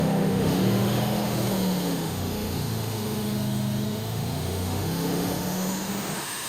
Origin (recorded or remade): remade